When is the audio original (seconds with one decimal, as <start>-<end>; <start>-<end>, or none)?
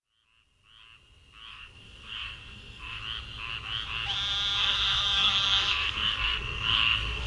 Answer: 0.0-1.5; 3.0-4.6